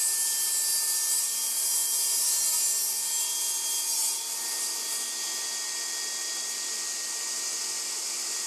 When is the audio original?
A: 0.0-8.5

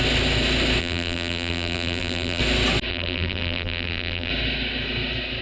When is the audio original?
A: 0.0-0.8; 2.4-2.9; 4.3-5.4

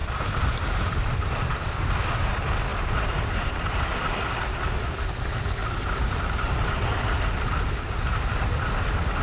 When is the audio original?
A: 1.7-2.7; 3.8-5.6; 6.2-9.2

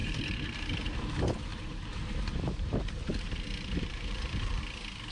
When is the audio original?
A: 1.1-1.5; 4.6-5.1

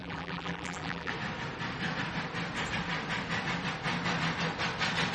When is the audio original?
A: 1.1-5.1

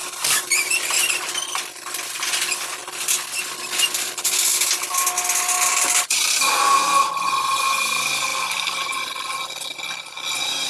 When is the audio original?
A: 1.1-5.7; 6.6-8.3; 9.4-10.7

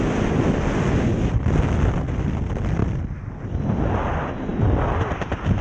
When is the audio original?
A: 0.0-5.6